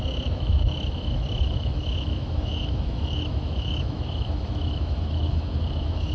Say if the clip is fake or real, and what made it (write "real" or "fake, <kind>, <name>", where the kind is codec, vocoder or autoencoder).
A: fake, autoencoder, DAC-VAE